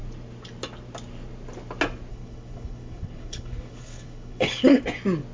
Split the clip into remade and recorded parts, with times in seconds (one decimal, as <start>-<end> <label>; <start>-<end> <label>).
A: 0.0-2.1 recorded; 2.1-4.8 remade; 4.8-5.3 recorded